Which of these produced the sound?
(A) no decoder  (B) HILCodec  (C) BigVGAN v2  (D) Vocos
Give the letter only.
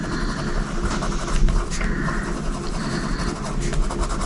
A